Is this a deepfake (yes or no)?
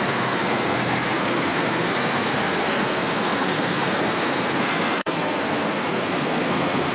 yes